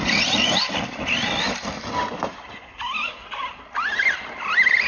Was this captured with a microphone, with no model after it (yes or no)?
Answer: yes